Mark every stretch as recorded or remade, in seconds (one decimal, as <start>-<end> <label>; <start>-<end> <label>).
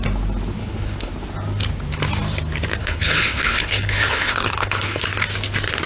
0.0-0.6 recorded; 0.6-1.1 remade; 1.1-2.8 recorded; 2.8-5.0 remade; 5.0-5.9 recorded